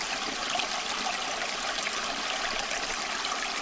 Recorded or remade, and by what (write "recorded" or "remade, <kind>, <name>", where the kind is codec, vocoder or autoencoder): recorded